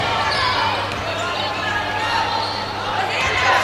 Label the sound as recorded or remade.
recorded